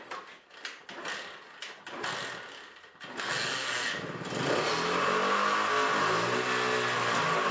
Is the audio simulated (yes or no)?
no